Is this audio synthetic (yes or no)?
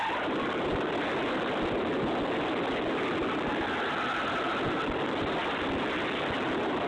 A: no